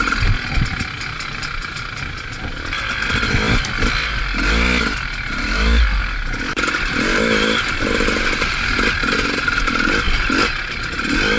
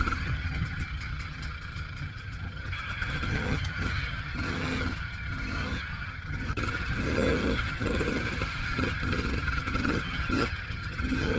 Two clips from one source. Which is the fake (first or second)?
second